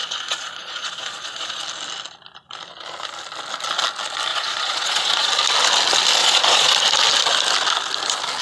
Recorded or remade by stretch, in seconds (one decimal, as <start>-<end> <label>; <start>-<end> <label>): 0.0-1.6 remade; 1.6-4.3 recorded; 4.3-5.3 remade; 5.3-6.2 recorded; 6.2-6.7 remade; 6.7-8.4 recorded